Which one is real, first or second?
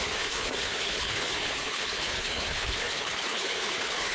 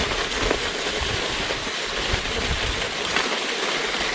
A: second